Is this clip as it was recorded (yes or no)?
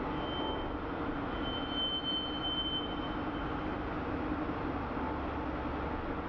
yes